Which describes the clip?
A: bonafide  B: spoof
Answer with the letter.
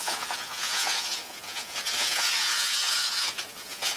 B